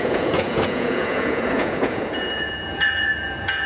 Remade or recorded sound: remade